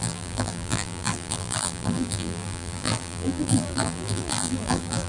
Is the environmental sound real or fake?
fake